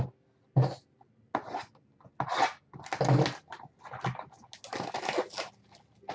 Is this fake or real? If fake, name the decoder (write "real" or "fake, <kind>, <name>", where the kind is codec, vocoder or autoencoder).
real